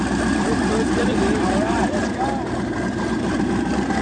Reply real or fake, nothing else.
fake